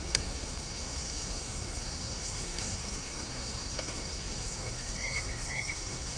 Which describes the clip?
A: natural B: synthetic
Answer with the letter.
B